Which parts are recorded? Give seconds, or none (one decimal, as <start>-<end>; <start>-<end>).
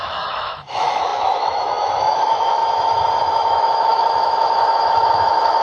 2.6-3.2